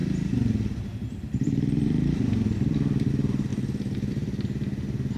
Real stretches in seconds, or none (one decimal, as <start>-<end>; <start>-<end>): 3.5-4.1